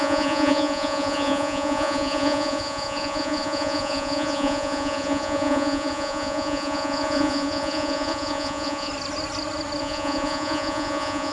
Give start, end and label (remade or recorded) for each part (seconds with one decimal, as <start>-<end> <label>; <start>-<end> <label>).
0.0-8.9 remade; 8.9-9.8 recorded; 9.8-11.3 remade